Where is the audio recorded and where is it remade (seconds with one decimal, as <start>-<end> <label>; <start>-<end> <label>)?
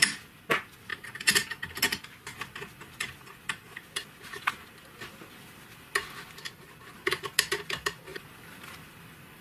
0.0-9.4 recorded